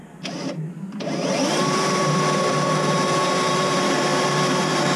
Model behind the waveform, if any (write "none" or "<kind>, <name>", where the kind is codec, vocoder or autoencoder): vocoder, BigVGAN v2